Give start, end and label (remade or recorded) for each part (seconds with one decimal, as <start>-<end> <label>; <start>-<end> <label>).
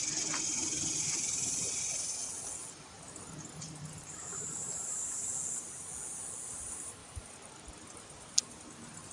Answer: 0.0-2.2 remade; 2.2-3.6 recorded; 3.6-5.3 remade; 5.3-6.5 recorded; 6.5-7.0 remade; 7.0-9.1 recorded